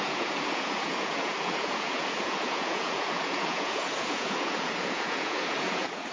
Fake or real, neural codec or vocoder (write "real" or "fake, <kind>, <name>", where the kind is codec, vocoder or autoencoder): fake, vocoder, Vocos